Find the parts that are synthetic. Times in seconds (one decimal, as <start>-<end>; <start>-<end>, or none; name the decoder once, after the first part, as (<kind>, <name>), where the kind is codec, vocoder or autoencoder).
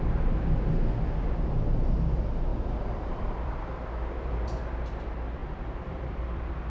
2.5-3.9 (vocoder, BigVGAN v2); 5.4-6.7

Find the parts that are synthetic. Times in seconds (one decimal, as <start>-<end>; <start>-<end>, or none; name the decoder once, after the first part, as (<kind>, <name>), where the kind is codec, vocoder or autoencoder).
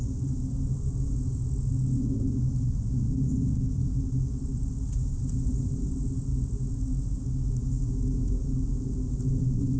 none